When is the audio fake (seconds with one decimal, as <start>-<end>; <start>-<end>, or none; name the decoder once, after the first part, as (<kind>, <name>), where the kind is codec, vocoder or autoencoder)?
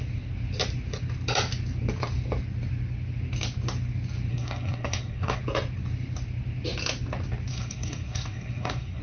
4.3-5.4 (codec, SNAC); 7.5-9.0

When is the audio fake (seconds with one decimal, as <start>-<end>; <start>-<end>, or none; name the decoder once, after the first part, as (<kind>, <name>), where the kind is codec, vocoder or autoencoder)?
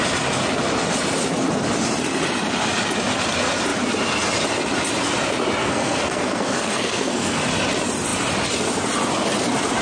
5.6-7.4 (codec, SNAC)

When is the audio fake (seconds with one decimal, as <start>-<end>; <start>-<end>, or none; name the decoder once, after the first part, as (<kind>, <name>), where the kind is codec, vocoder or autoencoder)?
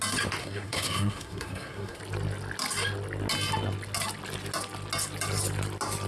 0.4-2.0 (codec, SNAC)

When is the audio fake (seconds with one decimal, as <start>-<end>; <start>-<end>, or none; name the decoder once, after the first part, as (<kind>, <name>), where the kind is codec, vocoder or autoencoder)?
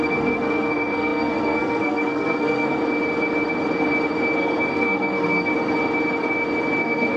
0.0-2.8 (codec, SNAC); 4.7-5.5; 6.8-7.2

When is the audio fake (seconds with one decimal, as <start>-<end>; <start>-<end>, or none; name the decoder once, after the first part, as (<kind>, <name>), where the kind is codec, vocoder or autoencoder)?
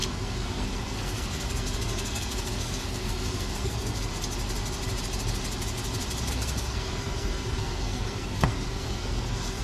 0.0-4.1 (codec, SNAC); 6.3-9.6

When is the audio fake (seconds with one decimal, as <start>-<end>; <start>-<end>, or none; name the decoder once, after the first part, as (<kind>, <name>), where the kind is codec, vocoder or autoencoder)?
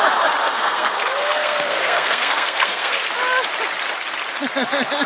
0.4-2.9 (codec, SNAC)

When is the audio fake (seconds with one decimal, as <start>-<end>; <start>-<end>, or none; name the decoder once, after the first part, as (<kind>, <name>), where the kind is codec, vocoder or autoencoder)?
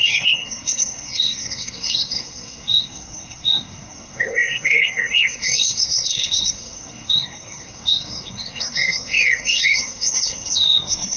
0.0-11.2 (codec, SNAC)